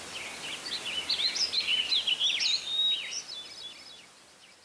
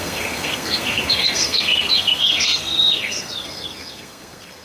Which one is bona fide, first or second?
first